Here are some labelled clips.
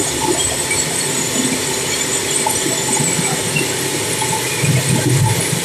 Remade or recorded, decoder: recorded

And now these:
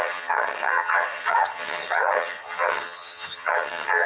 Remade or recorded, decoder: remade, vocoder, HiFi-GAN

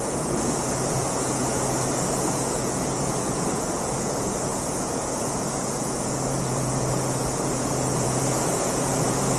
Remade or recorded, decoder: remade, vocoder, Vocos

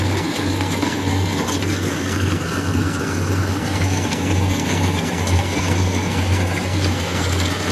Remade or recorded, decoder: remade, codec, SNAC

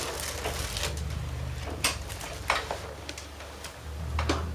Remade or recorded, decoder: recorded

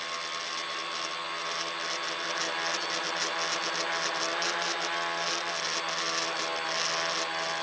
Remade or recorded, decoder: recorded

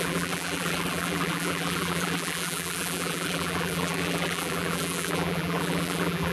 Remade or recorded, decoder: remade, vocoder, BigVGAN v2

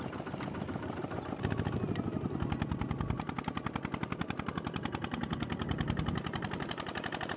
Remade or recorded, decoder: remade, vocoder, BigVGAN v2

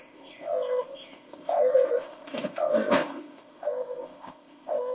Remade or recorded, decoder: remade, codec, ZipCodec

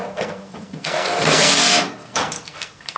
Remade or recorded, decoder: remade, codec, SNAC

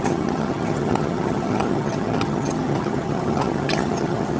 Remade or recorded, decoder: remade, vocoder, HiFi-GAN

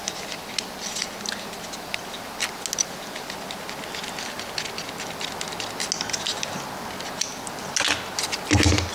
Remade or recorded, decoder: recorded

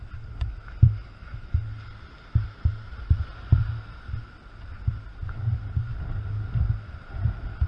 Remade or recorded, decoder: recorded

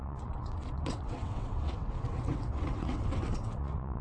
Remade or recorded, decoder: remade, vocoder, WaveNeXt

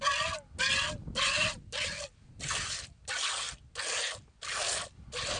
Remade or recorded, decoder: recorded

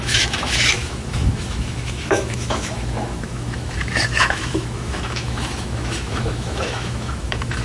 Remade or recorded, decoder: remade, autoencoder, DAC-VAE